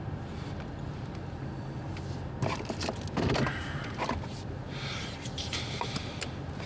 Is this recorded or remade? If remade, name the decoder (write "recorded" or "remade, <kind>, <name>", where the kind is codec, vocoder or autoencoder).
recorded